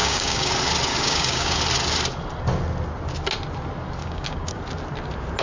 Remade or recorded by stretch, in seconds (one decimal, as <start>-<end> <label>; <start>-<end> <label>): 0.0-0.5 remade; 0.5-0.9 recorded; 0.9-1.6 remade; 1.6-4.0 recorded; 4.0-4.6 remade; 4.6-5.4 recorded